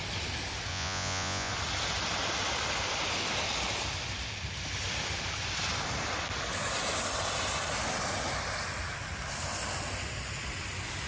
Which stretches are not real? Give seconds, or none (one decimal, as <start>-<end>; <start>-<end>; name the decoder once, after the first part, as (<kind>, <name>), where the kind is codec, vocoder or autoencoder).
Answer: 0.7-1.5 (vocoder, Vocos)